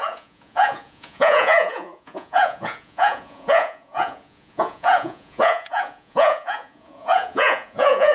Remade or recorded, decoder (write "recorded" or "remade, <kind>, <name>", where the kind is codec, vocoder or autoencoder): remade, vocoder, Vocos